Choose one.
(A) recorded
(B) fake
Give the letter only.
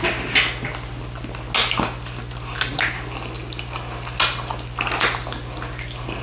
A